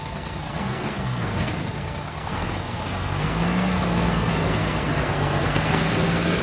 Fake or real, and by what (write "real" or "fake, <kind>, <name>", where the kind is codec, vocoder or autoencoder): fake, codec, SNAC